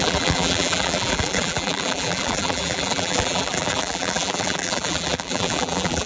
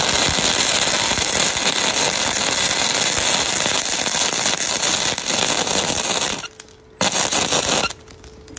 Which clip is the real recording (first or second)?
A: second